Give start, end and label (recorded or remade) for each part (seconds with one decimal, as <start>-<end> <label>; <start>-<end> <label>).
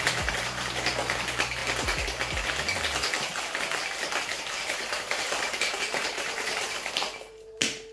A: 0.0-1.6 remade; 1.6-4.2 recorded; 4.2-7.9 remade